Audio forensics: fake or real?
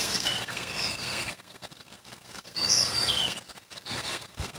fake